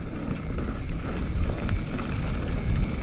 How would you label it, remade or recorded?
recorded